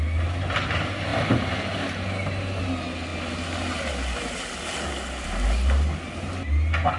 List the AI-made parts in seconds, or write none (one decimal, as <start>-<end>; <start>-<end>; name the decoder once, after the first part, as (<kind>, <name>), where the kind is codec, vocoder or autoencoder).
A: none